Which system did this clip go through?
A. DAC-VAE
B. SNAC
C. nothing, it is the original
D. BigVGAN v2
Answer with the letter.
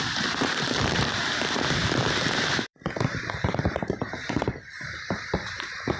D